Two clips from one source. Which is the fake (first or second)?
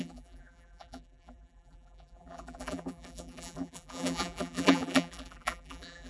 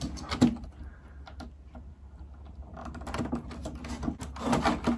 first